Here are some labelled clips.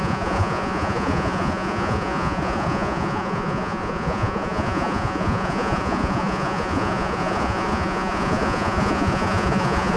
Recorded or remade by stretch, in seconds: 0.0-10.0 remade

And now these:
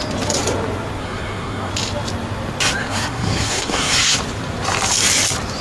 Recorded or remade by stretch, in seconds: 0.0-1.0 recorded; 1.0-1.7 remade; 1.7-2.8 recorded; 2.8-4.2 remade; 4.2-5.6 recorded

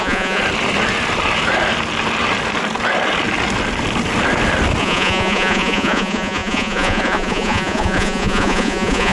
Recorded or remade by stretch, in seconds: 0.0-0.4 remade; 0.4-4.8 recorded; 4.8-9.1 remade

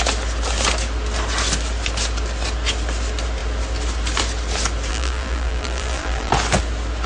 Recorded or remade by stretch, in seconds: 0.0-4.9 recorded; 4.9-6.3 remade; 6.3-7.1 recorded

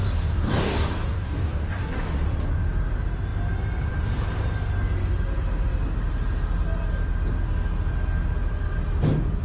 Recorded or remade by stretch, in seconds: 0.0-1.9 remade; 1.9-9.4 recorded